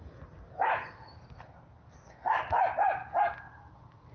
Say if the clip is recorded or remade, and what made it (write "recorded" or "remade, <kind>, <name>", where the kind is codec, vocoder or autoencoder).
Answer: recorded